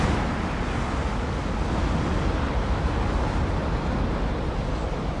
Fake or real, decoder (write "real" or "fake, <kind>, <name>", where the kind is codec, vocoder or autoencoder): real